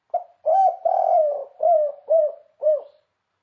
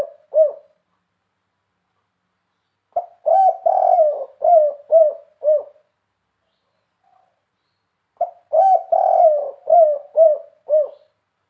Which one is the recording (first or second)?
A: second